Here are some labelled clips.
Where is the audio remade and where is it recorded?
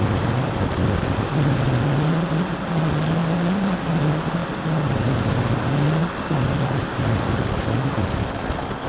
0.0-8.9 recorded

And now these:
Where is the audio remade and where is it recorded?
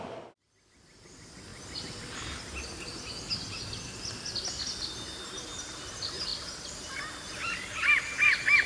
0.0-8.7 recorded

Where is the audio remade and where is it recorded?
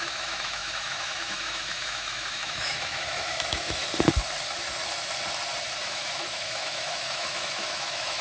0.0-3.8 remade; 3.8-5.8 recorded; 5.8-8.2 remade